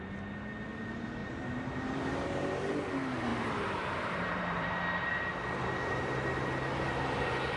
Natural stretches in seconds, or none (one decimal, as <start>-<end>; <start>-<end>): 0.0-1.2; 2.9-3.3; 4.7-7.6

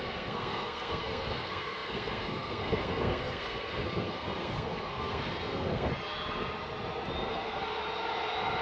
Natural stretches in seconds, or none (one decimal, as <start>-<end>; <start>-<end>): 5.9-7.3; 7.8-8.6

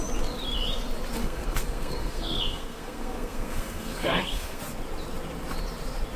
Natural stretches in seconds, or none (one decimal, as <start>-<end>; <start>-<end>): 0.0-1.2; 4.6-6.2